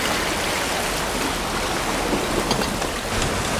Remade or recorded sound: recorded